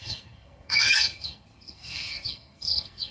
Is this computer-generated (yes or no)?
yes